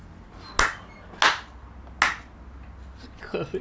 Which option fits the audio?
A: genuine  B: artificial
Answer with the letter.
A